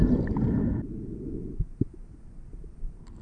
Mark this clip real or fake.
real